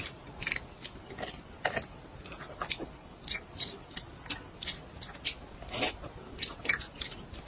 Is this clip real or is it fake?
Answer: real